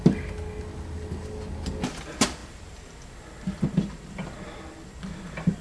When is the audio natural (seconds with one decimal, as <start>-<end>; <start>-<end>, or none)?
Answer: 0.0-5.6